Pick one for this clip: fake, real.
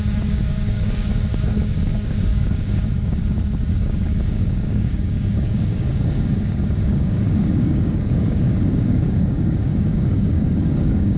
fake